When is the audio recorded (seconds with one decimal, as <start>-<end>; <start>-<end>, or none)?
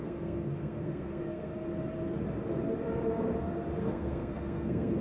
1.5-3.8